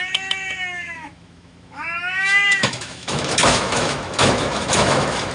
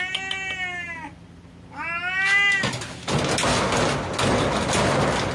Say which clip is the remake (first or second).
first